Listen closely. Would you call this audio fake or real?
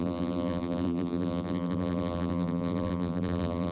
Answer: fake